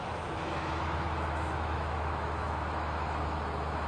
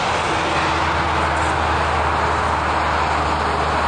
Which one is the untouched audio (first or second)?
second